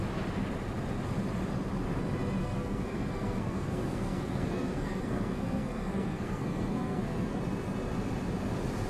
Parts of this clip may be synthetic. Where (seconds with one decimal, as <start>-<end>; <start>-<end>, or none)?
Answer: 2.4-7.4